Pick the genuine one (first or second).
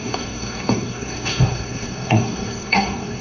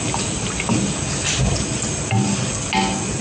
second